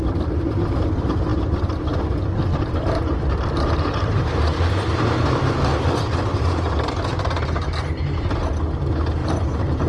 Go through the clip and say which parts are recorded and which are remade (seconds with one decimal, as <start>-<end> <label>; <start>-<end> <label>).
0.0-2.5 recorded; 2.5-4.7 remade; 4.7-6.3 recorded; 6.3-6.9 remade; 6.9-9.2 recorded; 9.2-9.9 remade